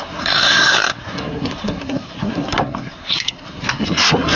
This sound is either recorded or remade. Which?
remade